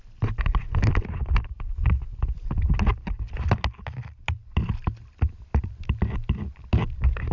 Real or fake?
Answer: real